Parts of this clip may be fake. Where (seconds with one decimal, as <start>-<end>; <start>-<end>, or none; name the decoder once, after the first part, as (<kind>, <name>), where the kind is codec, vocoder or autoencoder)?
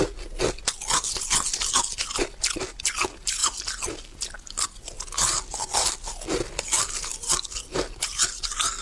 none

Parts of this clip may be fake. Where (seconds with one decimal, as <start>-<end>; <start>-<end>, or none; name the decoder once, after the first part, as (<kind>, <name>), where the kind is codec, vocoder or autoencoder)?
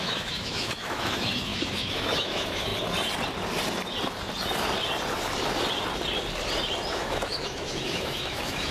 0.0-2.7 (autoencoder, DAC-VAE); 6.9-8.7